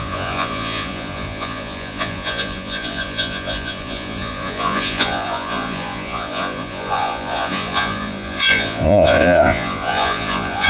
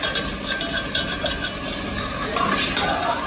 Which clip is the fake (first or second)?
first